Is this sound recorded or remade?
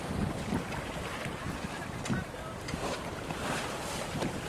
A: recorded